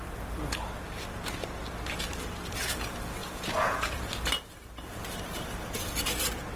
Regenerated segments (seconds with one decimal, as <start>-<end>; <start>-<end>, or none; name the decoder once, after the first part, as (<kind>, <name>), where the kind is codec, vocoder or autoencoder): 3.2-4.1 (vocoder, Vocos)